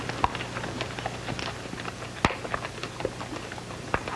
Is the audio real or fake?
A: real